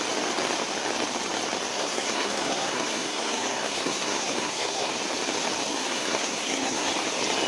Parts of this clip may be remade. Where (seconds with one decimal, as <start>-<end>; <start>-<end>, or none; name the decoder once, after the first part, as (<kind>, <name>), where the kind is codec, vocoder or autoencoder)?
1.7-4.9 (codec, SNAC); 5.7-6.9